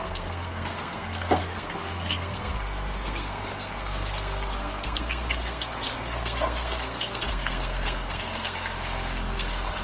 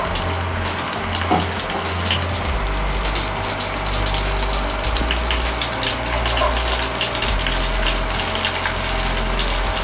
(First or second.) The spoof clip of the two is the first